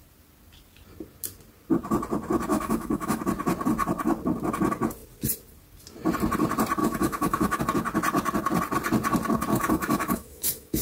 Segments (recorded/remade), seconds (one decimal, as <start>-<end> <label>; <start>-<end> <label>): 0.0-2.5 recorded; 2.5-3.2 remade; 3.2-6.8 recorded; 6.8-7.6 remade; 7.6-9.5 recorded; 9.5-10.8 remade

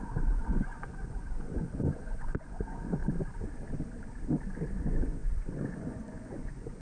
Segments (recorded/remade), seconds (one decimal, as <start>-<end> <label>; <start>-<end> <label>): 0.0-3.0 remade; 3.0-4.8 recorded; 4.8-6.8 remade